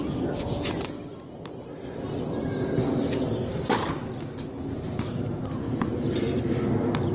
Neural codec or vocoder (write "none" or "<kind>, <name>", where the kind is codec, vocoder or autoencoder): none